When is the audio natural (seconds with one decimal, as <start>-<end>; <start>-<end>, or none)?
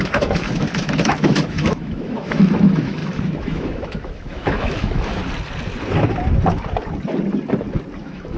5.2-8.0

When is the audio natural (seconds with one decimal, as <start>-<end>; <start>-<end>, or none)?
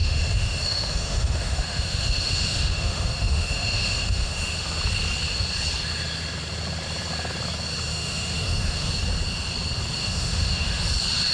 4.8-7.9; 8.9-10.0; 10.8-11.3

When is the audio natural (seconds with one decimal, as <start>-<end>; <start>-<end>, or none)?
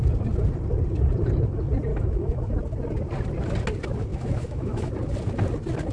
0.0-1.9; 2.5-4.1; 4.9-5.9